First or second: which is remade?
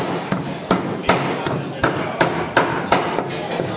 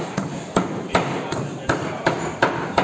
second